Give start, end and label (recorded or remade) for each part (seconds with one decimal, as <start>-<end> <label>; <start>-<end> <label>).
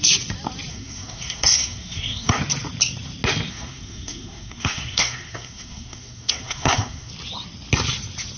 0.0-0.7 recorded; 0.7-2.4 remade; 2.4-3.5 recorded; 3.5-7.1 remade; 7.1-8.4 recorded